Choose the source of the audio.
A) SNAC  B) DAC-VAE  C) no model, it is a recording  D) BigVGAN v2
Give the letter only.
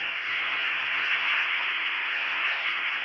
A